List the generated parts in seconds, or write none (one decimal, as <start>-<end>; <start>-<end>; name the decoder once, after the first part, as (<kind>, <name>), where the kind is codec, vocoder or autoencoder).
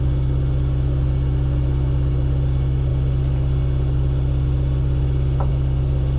none